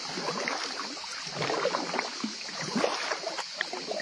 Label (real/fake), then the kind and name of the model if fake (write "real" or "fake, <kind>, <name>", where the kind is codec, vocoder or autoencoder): real